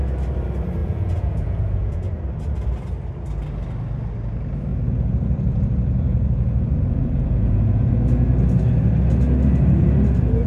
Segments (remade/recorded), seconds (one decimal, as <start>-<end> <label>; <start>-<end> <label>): 0.0-0.8 recorded; 0.8-2.2 remade; 2.2-4.7 recorded; 4.7-7.9 remade; 7.9-10.5 recorded